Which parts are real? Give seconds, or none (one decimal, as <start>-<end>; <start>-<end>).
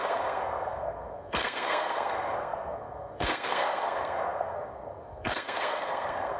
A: none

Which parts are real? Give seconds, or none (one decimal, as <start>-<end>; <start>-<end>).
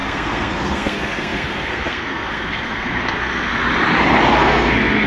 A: 3.5-4.3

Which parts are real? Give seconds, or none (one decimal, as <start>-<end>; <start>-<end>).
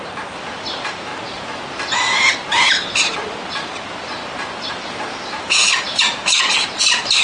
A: 1.1-4.7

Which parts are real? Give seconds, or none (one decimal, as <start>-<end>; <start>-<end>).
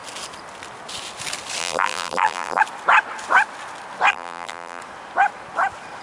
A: 0.0-1.6; 2.6-4.1; 4.8-6.0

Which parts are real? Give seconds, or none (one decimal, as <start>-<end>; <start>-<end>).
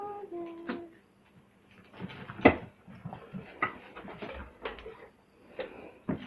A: 0.0-3.0; 3.8-6.3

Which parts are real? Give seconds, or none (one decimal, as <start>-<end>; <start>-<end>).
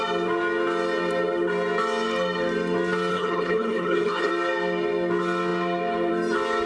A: 0.0-3.1; 4.3-6.7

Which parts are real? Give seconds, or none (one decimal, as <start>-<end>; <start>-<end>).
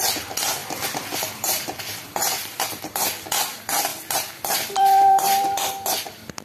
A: 0.0-0.6; 2.8-3.9; 5.7-6.4